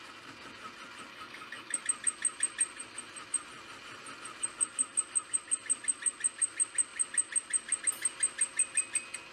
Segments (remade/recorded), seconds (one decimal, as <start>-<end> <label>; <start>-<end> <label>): 0.0-1.1 recorded; 1.1-1.8 remade; 1.8-9.3 recorded